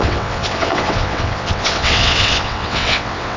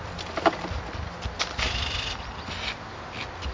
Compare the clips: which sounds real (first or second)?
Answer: second